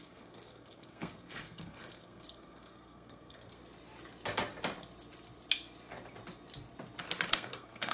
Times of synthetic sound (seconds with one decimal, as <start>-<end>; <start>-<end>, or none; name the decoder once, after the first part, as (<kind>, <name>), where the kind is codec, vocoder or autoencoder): 0.0-3.6 (codec, SNAC); 7.3-7.9